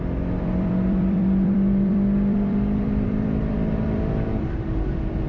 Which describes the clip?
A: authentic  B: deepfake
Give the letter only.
B